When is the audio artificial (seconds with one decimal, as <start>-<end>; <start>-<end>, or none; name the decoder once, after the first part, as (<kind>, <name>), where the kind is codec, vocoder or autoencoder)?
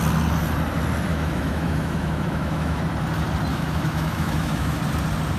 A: 1.1-2.8 (autoencoder, DAC-VAE); 3.5-4.8